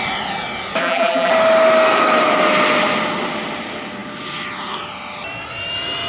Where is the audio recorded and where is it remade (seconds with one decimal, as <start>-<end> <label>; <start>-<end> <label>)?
0.0-0.8 recorded; 0.8-1.3 remade; 1.3-6.1 recorded